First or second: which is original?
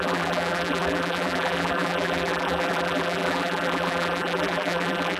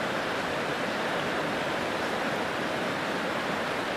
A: second